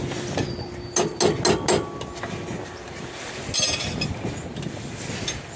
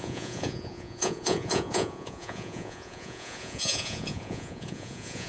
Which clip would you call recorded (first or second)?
first